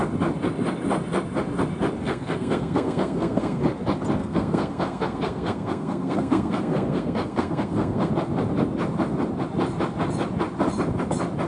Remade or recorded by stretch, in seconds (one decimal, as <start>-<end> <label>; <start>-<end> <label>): 0.0-2.0 recorded; 2.0-3.6 remade; 3.6-4.2 recorded; 4.2-8.1 remade; 8.1-11.5 recorded